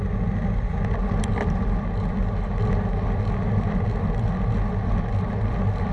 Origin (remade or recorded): recorded